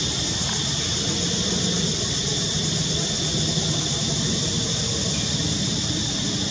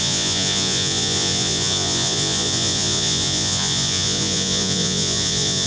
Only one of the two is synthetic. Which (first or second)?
second